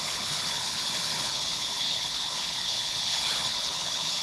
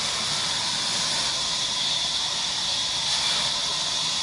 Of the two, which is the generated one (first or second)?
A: first